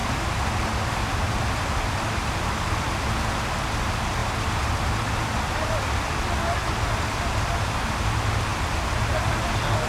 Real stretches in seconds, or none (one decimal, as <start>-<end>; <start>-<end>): 1.4-4.2; 8.0-9.9